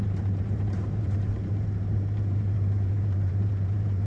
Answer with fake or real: fake